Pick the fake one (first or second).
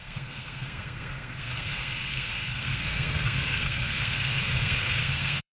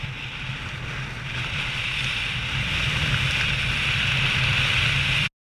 first